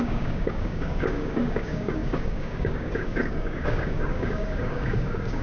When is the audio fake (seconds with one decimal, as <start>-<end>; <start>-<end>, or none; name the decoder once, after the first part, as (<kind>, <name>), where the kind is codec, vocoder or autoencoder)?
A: 0.0-5.4 (codec, DAC)